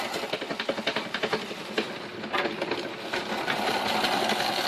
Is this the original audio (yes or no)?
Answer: yes